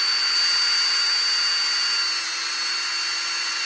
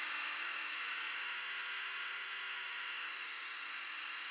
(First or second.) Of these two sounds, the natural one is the first